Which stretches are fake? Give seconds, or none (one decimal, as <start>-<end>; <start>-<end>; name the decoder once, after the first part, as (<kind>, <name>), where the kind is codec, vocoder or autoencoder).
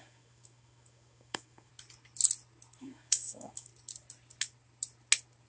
0.0-1.7 (autoencoder, DAC-VAE); 2.8-3.7